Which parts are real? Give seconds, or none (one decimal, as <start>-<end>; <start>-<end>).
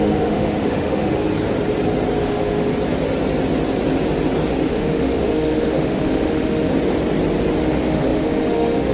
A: 1.2-2.2; 2.7-4.5; 6.7-7.6